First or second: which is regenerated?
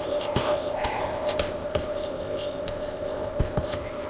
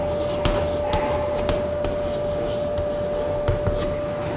first